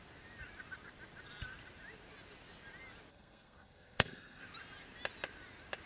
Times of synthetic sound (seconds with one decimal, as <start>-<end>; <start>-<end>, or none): 3.1-4.4